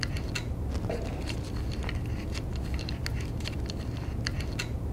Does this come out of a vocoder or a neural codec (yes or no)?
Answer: no